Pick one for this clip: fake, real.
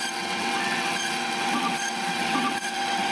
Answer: fake